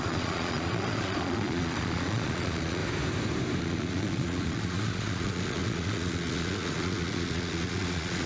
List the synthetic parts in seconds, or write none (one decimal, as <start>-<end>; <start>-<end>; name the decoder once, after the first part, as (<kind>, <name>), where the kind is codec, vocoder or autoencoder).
0.0-2.8 (vocoder, Vocos); 3.6-8.3